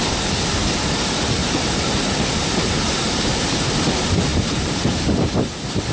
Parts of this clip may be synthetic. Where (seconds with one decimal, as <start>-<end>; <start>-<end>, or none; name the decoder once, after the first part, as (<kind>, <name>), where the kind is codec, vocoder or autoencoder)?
none